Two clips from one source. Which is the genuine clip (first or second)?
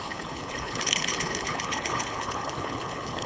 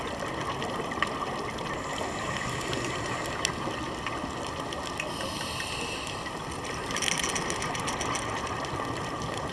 second